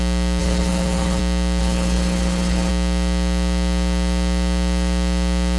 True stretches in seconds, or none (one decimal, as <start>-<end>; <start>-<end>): 0.0-0.4; 1.2-1.6; 2.7-5.6